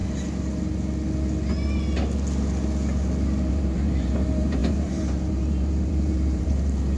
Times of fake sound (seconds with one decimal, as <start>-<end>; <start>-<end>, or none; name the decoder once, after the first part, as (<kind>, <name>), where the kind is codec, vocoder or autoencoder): 3.5-7.0 (vocoder, BigVGAN v2)